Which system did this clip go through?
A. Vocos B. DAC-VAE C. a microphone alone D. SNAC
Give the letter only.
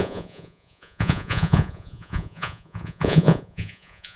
A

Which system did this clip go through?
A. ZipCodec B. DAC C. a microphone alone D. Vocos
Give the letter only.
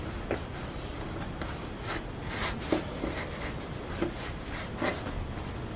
C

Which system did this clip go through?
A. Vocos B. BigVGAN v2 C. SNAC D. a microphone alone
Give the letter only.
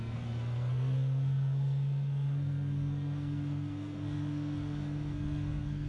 C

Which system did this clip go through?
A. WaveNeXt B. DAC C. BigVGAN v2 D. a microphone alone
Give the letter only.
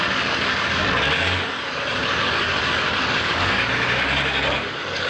B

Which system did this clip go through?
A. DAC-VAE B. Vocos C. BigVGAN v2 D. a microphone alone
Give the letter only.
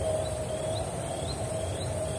D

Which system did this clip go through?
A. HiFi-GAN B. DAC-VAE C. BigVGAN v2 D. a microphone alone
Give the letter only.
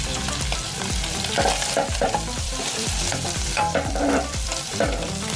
C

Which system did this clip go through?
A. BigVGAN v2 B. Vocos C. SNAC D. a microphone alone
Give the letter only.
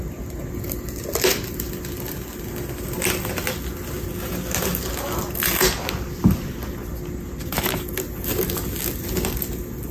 D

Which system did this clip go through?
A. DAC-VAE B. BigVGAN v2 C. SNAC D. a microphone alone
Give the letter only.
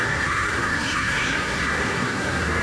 C